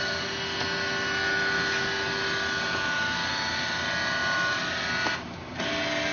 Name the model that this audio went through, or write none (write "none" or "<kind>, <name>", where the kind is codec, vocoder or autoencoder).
none